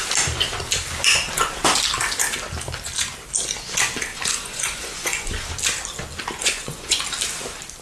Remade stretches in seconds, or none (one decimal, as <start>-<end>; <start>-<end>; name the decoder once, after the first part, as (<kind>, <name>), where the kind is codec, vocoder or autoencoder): 4.1-5.5 (vocoder, Vocos); 6.4-7.0